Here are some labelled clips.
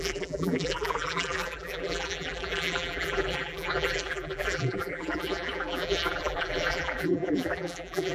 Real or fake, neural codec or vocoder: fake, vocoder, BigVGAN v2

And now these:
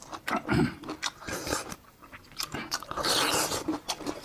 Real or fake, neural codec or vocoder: fake, vocoder, BigVGAN v2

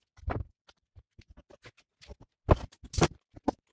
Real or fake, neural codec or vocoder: real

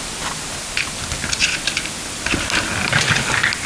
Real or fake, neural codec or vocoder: real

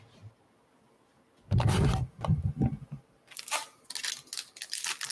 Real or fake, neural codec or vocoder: real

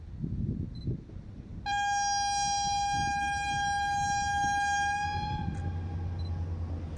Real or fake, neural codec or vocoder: real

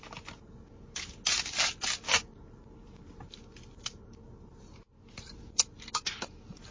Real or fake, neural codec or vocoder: real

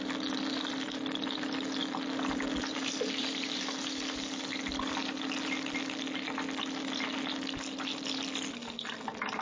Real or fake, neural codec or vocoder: real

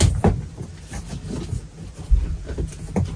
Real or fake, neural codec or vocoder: real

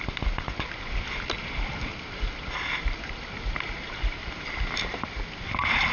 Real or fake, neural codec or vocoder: real